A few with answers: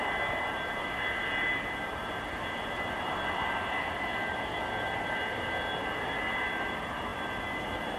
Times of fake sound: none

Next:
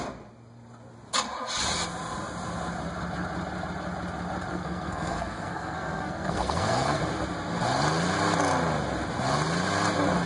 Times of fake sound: 4.5-7.0 (codec, SNAC)

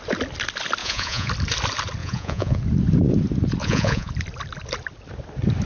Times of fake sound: 0.8-1.3 (vocoder, Vocos); 2.0-2.6; 3.6-4.1

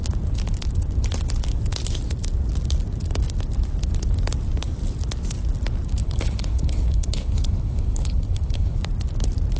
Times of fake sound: 6.0-8.8 (codec, HILCodec)

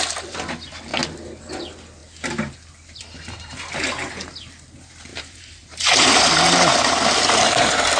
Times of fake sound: 5.1-6.3 (vocoder, BigVGAN v2)

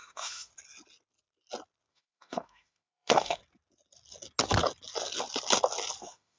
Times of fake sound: 0.0-0.5 (autoencoder, DAC-VAE); 1.9-3.4; 6.0-6.4

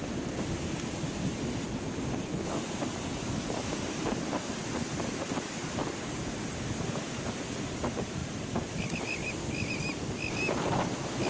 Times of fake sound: none